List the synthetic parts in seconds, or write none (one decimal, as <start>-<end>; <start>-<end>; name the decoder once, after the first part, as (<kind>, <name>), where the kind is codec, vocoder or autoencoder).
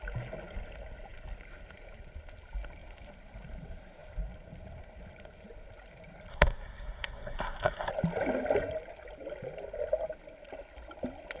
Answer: 6.3-7.9 (codec, SNAC)